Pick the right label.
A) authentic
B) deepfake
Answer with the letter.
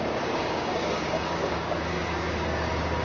B